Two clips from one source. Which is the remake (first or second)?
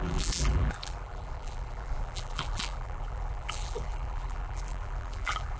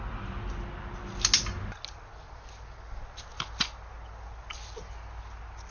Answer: first